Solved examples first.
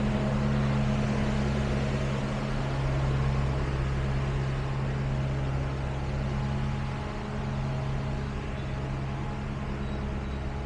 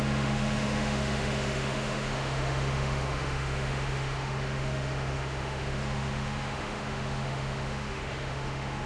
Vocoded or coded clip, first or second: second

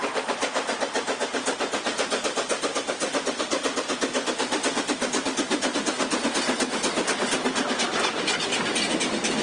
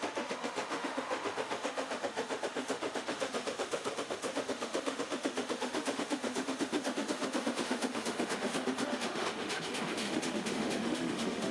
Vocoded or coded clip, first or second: second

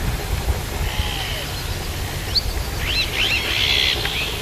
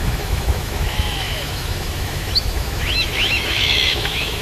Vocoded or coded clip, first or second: second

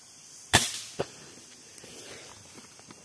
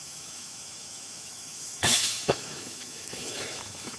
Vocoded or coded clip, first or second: second